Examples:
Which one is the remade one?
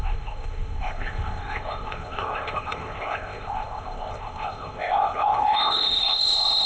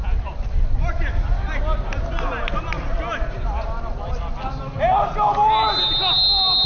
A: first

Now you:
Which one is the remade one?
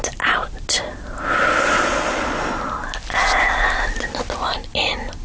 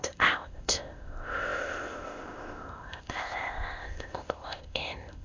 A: second